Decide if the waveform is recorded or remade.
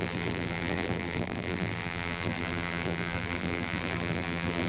remade